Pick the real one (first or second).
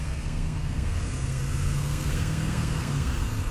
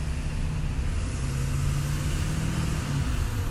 second